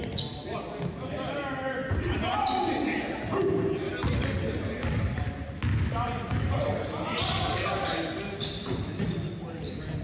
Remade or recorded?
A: recorded